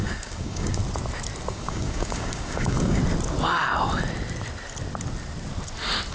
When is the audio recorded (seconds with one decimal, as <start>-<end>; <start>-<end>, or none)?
0.8-1.5; 3.0-6.1